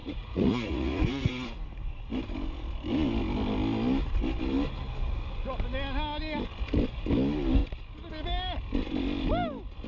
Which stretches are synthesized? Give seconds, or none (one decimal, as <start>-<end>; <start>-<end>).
0.0-1.3